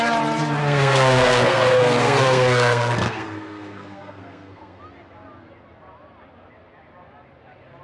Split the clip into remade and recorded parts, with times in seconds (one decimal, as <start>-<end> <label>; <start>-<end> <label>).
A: 0.0-0.6 recorded; 0.6-4.8 remade; 4.8-7.8 recorded